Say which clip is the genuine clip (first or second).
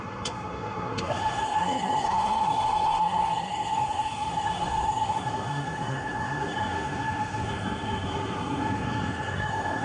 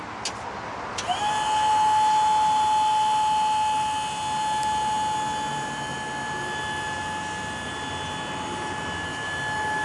second